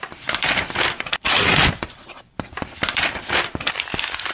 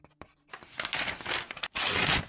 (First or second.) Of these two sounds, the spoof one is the first